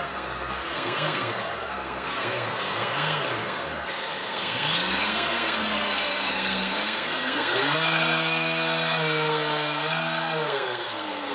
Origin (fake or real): fake